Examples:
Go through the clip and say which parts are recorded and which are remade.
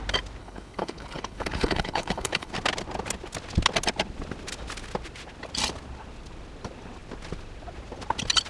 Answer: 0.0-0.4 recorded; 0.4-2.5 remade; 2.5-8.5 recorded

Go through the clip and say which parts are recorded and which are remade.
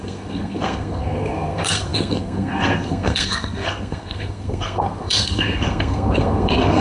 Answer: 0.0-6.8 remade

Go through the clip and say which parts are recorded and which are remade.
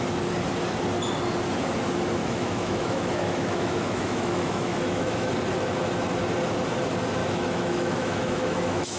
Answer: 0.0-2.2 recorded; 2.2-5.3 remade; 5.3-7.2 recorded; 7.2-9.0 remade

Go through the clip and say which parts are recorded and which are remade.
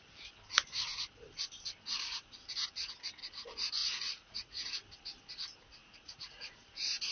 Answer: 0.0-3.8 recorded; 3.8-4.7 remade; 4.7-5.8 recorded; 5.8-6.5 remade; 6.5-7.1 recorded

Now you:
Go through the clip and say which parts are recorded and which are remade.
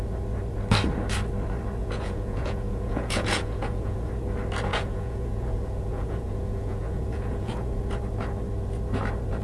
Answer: 0.0-1.8 recorded; 1.8-4.1 remade; 4.1-4.7 recorded; 4.7-7.8 remade; 7.8-9.4 recorded